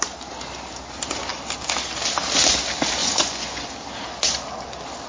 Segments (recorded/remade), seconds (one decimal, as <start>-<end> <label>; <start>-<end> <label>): 0.0-3.0 recorded; 3.0-3.7 remade; 3.7-5.1 recorded